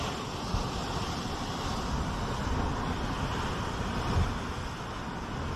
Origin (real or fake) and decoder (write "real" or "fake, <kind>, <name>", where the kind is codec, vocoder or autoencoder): real